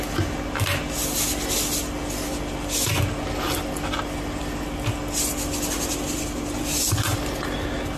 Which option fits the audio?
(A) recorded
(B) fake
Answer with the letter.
A